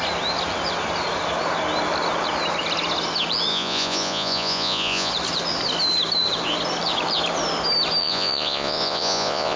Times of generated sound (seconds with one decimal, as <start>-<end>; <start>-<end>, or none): 3.5-5.1; 8.0-9.6